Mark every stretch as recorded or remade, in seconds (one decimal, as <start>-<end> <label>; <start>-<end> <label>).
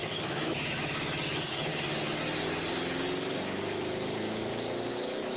0.0-1.7 remade; 1.7-4.9 recorded; 4.9-5.4 remade